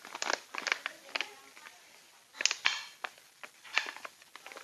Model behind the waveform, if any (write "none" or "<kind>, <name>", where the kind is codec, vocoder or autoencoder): none